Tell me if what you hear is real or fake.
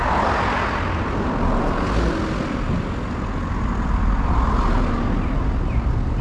real